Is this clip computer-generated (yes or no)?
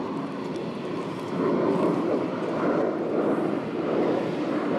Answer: no